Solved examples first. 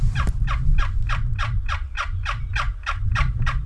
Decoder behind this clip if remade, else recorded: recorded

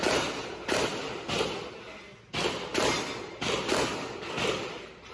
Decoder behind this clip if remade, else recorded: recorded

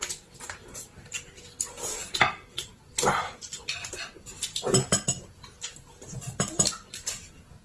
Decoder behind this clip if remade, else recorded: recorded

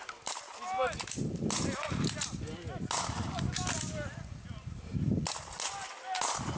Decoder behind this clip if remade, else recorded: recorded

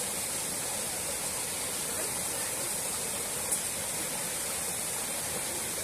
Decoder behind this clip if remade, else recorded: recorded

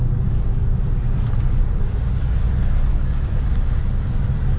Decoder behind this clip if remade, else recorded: recorded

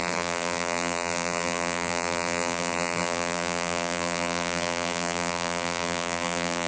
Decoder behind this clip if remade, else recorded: remade, vocoder, BigVGAN v2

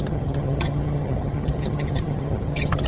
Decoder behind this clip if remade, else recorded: remade, vocoder, HiFi-GAN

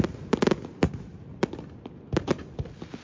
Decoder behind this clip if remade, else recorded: recorded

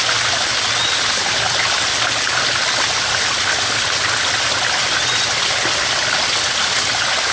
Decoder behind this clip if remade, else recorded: recorded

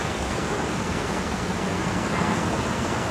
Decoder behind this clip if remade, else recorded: remade, codec, SNAC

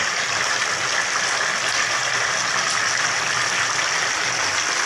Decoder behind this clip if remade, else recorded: recorded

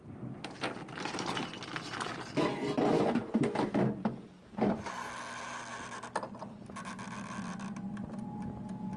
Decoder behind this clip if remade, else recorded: recorded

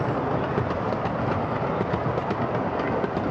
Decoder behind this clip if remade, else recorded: recorded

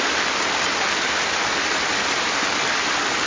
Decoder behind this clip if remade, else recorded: recorded